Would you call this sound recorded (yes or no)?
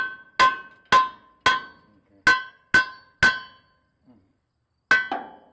yes